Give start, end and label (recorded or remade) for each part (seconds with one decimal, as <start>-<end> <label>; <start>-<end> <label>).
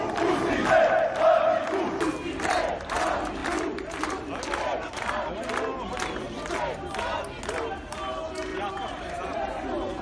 0.0-8.5 recorded; 8.5-9.4 remade; 9.4-10.0 recorded